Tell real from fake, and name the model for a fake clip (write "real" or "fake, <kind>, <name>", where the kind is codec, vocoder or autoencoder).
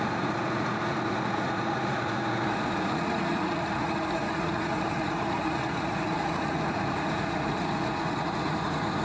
fake, vocoder, Vocos